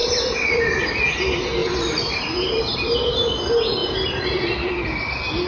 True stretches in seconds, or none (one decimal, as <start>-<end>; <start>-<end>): 1.0-1.6; 2.6-3.8; 4.7-5.5